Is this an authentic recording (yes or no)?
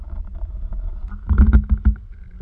yes